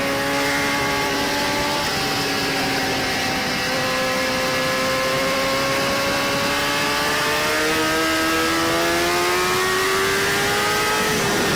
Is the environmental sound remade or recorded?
recorded